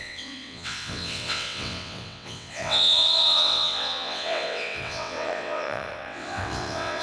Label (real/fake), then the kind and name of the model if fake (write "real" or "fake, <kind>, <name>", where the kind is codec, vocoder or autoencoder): fake, vocoder, WaveNeXt